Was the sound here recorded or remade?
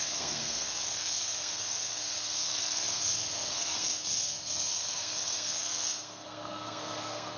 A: remade